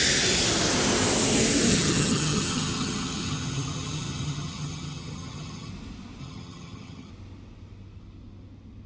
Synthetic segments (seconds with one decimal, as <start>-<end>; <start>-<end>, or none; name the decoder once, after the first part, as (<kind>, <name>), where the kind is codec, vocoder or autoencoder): 1.7-5.7 (vocoder, HiFi-GAN); 6.2-7.1